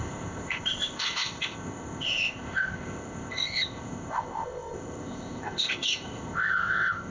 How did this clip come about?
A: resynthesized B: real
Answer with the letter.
A